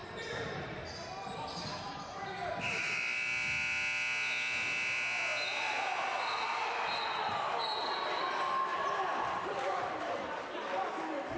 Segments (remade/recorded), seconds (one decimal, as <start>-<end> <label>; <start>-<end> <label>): 0.0-0.8 remade; 0.8-8.7 recorded; 8.7-10.5 remade; 10.5-11.4 recorded